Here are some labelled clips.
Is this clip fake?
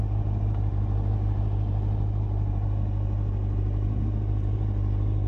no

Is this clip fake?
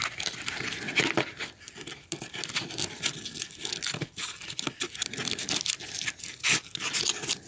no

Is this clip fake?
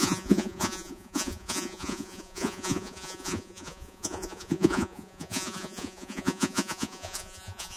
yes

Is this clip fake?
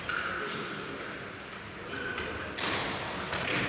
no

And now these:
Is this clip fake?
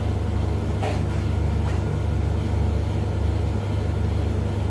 no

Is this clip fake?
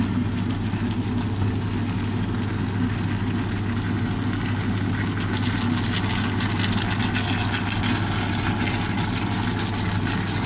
no